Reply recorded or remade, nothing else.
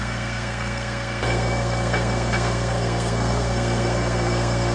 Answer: remade